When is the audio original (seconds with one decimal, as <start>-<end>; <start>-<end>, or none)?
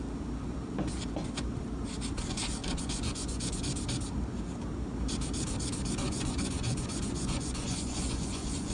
0.0-2.6; 3.6-6.0